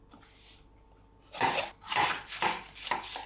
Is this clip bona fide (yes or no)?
yes